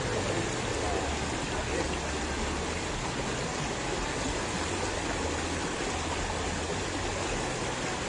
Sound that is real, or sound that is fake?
real